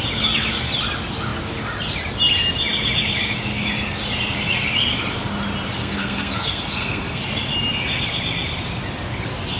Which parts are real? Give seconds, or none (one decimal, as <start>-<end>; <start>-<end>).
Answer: 0.0-5.8; 7.2-9.6